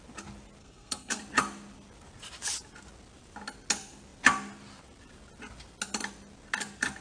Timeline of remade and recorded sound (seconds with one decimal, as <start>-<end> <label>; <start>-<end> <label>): 0.0-0.6 recorded; 0.6-1.2 remade; 1.2-7.0 recorded